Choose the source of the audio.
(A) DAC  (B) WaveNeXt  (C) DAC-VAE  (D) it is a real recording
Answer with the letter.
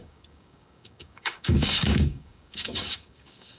A